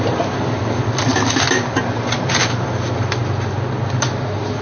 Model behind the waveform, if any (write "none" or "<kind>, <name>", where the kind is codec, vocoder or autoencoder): none